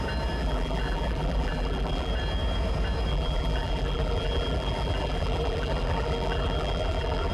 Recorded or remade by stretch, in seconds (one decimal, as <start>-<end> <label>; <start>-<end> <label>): 0.0-0.4 recorded; 0.4-2.1 remade; 2.1-3.1 recorded; 3.1-7.3 remade